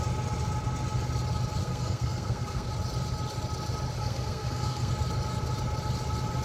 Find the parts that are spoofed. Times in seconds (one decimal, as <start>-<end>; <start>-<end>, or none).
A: 1.6-2.7; 4.0-4.9